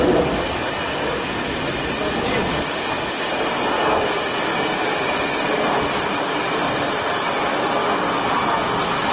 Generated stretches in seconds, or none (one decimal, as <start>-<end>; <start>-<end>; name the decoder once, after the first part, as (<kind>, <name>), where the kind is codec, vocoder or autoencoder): none

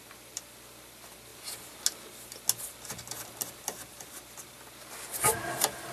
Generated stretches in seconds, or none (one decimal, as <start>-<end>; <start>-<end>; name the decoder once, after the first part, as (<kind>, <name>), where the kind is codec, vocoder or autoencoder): 0.0-1.3 (vocoder, BigVGAN v2); 2.6-5.9

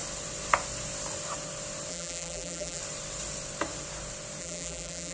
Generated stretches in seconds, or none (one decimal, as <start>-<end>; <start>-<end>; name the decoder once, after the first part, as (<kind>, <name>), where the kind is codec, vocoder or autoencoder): 1.9-2.8 (vocoder, BigVGAN v2); 4.4-5.1

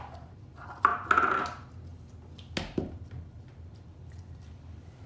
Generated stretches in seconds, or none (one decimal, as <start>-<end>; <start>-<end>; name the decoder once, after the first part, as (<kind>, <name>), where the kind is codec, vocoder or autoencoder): none

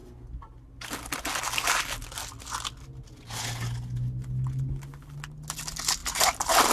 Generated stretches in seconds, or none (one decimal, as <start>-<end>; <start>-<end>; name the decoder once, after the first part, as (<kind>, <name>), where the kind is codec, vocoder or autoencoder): 6.0-6.7 (vocoder, BigVGAN v2)